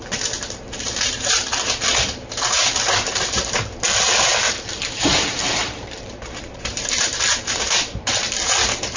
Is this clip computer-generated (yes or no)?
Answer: yes